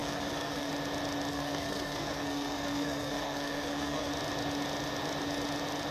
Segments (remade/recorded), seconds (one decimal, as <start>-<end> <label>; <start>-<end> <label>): 0.0-0.7 remade; 0.7-1.3 recorded; 1.3-4.1 remade; 4.1-5.9 recorded